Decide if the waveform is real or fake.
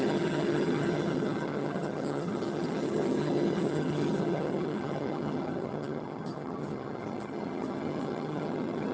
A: fake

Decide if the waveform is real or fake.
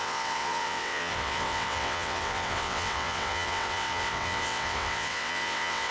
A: fake